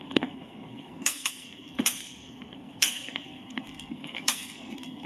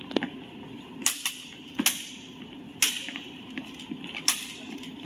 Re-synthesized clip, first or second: first